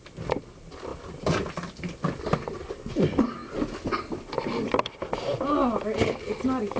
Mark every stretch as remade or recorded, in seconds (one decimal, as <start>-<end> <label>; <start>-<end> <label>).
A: 0.0-6.8 recorded

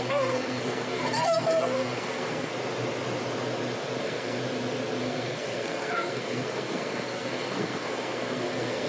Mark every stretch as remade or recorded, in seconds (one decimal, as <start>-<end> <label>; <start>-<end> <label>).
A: 0.0-2.5 remade; 2.5-4.0 recorded; 4.0-4.4 remade; 4.4-5.0 recorded; 5.0-8.9 remade

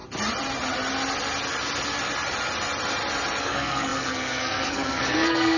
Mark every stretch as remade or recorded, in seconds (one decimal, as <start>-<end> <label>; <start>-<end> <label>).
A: 0.0-3.4 recorded; 3.4-5.6 remade

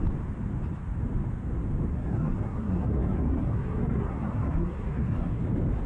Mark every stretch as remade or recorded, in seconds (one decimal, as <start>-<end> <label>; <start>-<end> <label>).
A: 0.0-1.9 recorded; 1.9-5.4 remade; 5.4-5.9 recorded

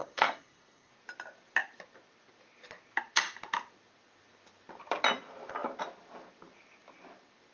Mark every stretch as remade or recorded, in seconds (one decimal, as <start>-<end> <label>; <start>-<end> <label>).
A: 0.0-0.9 remade; 0.9-7.5 recorded

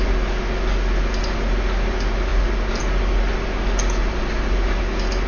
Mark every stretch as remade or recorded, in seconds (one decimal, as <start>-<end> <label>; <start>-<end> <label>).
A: 0.0-2.3 recorded; 2.3-2.8 remade; 2.8-4.0 recorded; 4.0-4.8 remade; 4.8-5.3 recorded